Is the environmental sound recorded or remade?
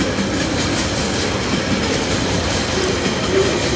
recorded